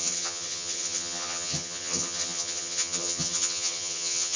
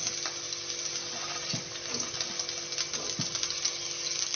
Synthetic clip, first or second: first